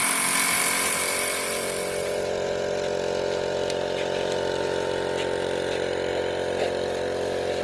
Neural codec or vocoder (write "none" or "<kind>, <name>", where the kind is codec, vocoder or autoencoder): none